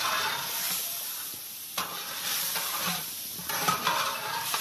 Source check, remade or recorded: remade